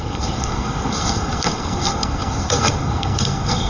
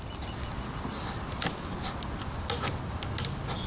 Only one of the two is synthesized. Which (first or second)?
first